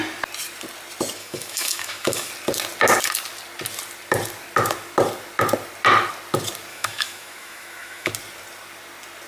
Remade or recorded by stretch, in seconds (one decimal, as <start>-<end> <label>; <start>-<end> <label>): 0.0-1.2 recorded; 1.2-2.3 remade; 2.3-6.7 recorded; 6.7-8.1 remade; 8.1-9.3 recorded